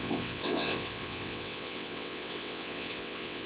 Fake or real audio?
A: fake